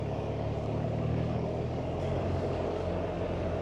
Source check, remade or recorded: remade